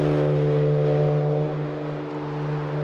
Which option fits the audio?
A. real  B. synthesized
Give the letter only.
A